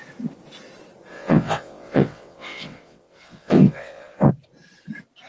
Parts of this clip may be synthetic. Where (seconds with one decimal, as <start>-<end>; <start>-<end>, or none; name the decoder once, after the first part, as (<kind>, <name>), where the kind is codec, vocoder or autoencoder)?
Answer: 1.1-4.3 (vocoder, WaveNeXt)